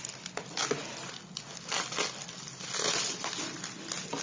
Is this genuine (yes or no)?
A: yes